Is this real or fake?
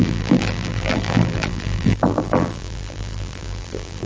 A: fake